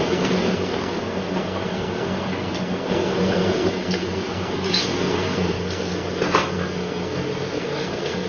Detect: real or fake fake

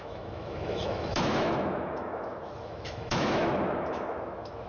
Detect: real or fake fake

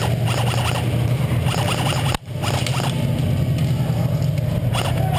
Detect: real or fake real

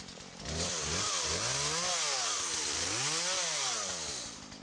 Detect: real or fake real